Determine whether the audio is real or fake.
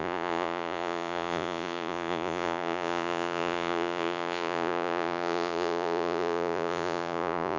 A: fake